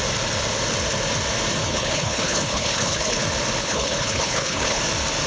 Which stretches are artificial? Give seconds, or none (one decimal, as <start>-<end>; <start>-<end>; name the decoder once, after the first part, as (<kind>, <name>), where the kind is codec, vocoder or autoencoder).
1.6-3.2 (codec, HILCodec); 3.6-4.8